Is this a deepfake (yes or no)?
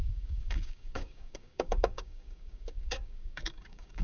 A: yes